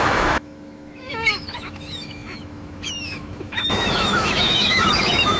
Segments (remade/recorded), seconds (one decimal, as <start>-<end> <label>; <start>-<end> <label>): 0.0-5.4 remade